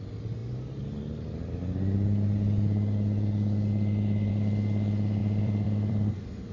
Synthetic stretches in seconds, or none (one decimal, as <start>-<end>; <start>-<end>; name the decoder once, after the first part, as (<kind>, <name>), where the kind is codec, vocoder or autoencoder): 5.2-6.1 (vocoder, BigVGAN v2)